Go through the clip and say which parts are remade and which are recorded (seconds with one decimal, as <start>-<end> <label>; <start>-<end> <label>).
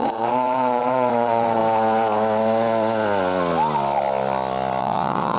0.0-1.6 remade; 1.6-4.8 recorded; 4.8-5.4 remade